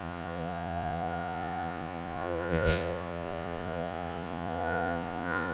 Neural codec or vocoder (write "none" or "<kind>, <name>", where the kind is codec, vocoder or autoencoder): vocoder, Vocos